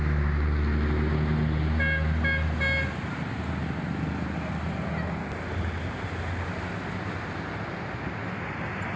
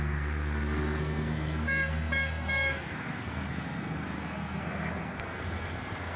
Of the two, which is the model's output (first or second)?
second